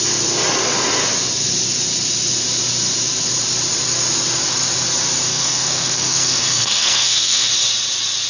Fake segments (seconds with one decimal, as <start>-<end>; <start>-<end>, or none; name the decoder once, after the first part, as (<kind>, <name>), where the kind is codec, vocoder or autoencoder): 5.3-7.5 (codec, SNAC)